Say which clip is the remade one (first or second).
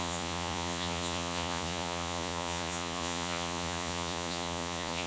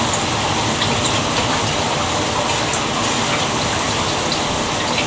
first